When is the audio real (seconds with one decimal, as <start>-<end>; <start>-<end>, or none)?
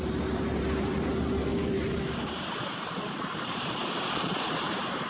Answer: none